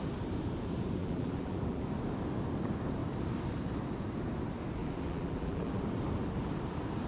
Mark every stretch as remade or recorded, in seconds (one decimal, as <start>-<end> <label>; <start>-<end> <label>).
0.0-1.0 recorded; 1.0-1.8 remade; 1.8-4.8 recorded; 4.8-5.8 remade; 5.8-7.1 recorded